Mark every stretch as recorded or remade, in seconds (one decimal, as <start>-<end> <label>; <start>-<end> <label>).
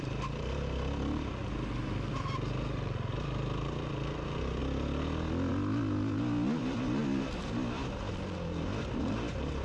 0.0-9.6 recorded